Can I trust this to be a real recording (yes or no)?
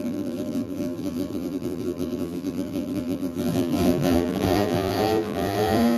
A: no